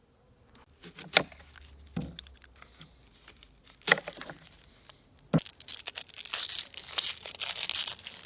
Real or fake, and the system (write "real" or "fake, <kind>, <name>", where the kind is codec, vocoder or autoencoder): real